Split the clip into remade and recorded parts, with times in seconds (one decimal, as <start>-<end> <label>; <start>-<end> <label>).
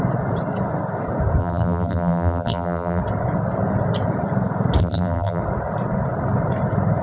0.0-1.4 recorded; 1.4-3.0 remade; 3.0-4.8 recorded; 4.8-5.4 remade; 5.4-7.0 recorded